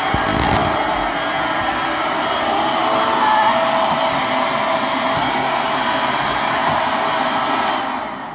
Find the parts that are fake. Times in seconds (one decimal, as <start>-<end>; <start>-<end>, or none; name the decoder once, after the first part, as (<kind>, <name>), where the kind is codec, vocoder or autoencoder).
none